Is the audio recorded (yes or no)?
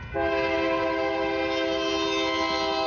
yes